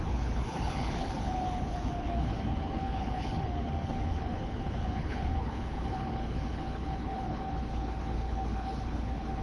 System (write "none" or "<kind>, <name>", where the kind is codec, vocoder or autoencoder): codec, HILCodec